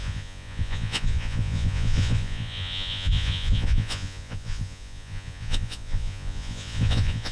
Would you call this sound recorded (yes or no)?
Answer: no